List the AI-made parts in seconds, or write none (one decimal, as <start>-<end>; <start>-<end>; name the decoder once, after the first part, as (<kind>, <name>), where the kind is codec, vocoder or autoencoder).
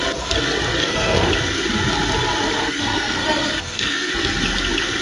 0.8-1.3 (codec, SNAC); 2.6-4.1